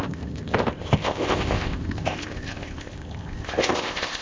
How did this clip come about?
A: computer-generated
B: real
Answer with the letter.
A